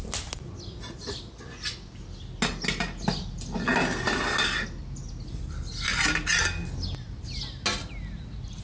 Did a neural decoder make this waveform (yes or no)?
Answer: no